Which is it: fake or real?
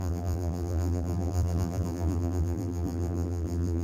fake